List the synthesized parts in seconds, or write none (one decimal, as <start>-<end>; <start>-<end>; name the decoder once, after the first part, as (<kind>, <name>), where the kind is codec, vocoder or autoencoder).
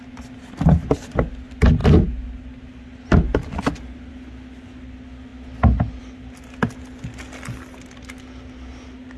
none